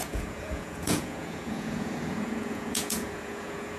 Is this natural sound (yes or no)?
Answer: no